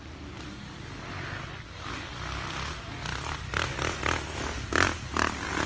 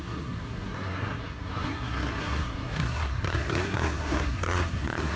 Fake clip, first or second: second